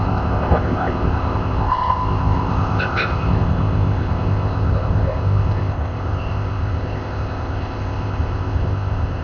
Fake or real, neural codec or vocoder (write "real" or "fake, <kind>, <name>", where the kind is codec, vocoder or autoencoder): fake, codec, ZipCodec